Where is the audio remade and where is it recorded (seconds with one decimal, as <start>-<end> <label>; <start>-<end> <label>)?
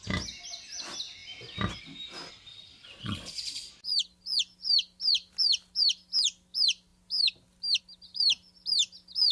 0.0-2.5 recorded; 2.5-3.7 remade; 3.7-9.3 recorded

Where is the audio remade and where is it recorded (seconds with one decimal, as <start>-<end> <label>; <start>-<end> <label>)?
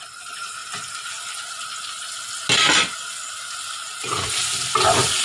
0.0-5.2 recorded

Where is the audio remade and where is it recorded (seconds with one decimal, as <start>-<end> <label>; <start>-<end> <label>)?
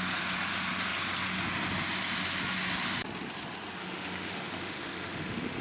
0.0-3.8 recorded; 3.8-5.6 remade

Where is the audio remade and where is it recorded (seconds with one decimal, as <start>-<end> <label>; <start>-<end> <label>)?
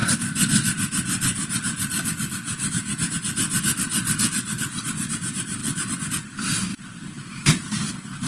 0.0-6.7 recorded; 6.7-8.3 remade